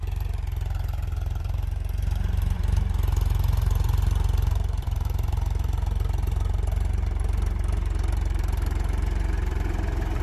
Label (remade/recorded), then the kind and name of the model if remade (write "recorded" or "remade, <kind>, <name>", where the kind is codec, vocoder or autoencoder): remade, vocoder, BigVGAN v2